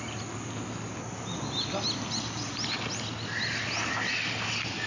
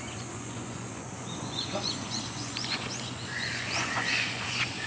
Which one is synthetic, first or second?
second